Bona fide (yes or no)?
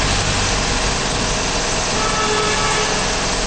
yes